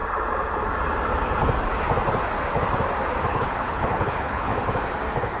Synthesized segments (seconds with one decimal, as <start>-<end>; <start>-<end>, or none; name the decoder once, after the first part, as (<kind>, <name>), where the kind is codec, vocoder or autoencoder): 3.2-4.5 (codec, HILCodec)